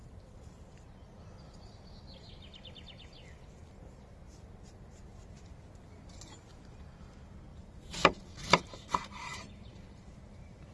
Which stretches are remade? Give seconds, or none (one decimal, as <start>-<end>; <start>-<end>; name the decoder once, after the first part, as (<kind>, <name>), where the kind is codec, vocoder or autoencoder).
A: 7.5-10.7 (vocoder, BigVGAN v2)